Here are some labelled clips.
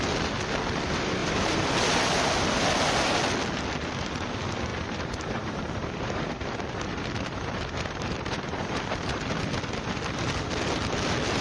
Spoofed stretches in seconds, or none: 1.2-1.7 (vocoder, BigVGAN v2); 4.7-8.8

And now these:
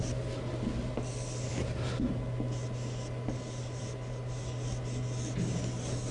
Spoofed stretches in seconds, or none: none